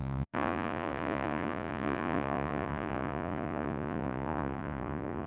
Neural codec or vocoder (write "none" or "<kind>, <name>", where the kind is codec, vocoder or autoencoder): vocoder, Vocos